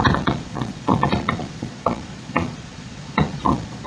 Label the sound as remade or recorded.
remade